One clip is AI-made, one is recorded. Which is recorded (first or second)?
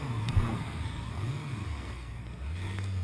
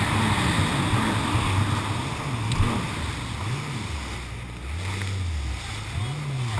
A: second